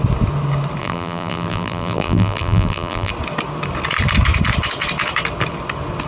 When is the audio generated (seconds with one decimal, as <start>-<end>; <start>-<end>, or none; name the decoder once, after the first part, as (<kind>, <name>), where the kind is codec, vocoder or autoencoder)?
0.8-3.1 (vocoder, BigVGAN v2)

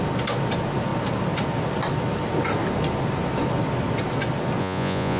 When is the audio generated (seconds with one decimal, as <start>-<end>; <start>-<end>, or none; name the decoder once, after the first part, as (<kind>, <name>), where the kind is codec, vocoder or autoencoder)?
4.6-5.2 (vocoder, Vocos)

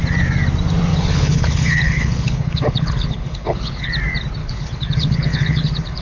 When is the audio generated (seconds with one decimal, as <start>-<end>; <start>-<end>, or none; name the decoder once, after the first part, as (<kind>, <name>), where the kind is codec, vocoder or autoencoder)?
0.9-3.9 (codec, HILCodec); 4.4-6.0

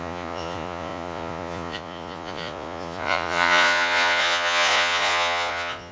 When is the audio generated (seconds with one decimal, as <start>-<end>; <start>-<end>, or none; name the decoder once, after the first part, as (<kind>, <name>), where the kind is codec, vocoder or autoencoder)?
0.0-5.9 (vocoder, Vocos)

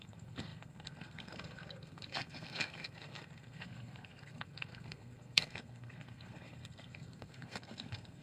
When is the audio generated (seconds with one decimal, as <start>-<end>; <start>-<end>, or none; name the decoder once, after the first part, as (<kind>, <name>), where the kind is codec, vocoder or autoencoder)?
0.0-8.2 (codec, SNAC)

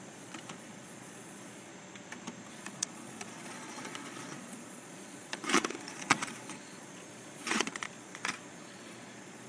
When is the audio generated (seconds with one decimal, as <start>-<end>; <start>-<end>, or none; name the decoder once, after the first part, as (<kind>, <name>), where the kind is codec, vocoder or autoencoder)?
0.0-1.7 (vocoder, Vocos); 2.5-9.5

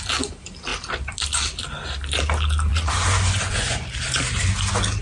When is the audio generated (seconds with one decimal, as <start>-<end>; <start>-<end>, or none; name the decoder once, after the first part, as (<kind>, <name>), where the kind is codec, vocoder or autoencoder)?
2.7-3.9 (vocoder, Vocos)

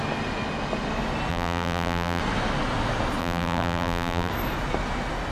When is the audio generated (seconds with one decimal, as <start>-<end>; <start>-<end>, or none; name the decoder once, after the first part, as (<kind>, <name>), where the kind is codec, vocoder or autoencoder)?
1.3-2.2 (vocoder, BigVGAN v2); 3.2-4.3